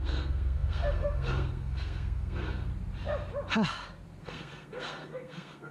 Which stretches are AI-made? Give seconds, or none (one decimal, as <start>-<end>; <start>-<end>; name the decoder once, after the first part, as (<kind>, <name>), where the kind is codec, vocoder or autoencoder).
0.0-2.7 (codec, SNAC); 4.2-5.7